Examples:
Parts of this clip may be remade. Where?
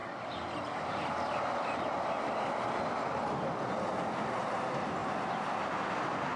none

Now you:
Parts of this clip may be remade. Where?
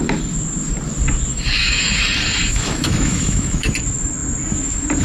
1.3-2.0 (autoencoder, DAC-VAE); 2.5-3.7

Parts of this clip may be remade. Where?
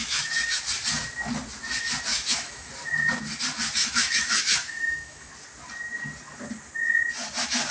0.0-0.6 (autoencoder, DAC-VAE); 2.1-2.7; 3.8-5.3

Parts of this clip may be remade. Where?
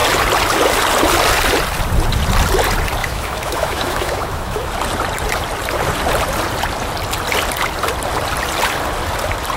3.0-4.7 (autoencoder, DAC-VAE)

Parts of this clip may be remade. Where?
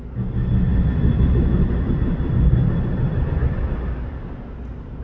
none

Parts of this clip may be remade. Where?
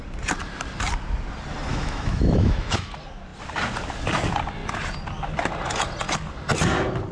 1.7-2.9 (autoencoder, DAC-VAE)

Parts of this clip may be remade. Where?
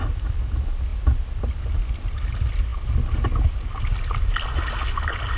none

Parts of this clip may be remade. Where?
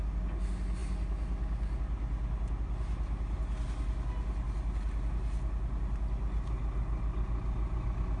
none